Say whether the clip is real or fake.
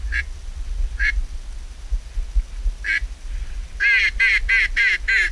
real